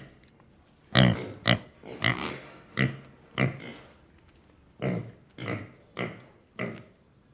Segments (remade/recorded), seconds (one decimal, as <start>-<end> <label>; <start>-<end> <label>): 0.0-7.3 recorded